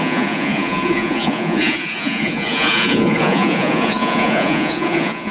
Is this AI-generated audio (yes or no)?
yes